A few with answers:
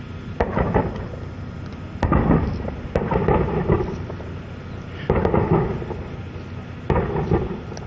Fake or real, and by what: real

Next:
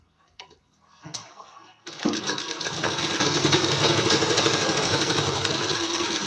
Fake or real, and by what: fake, codec, SNAC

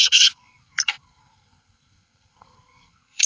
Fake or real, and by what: fake, codec, SNAC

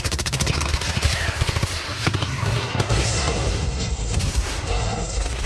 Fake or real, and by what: fake, codec, SNAC